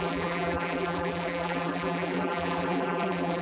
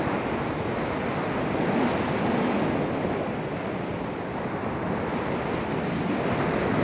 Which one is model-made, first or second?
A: first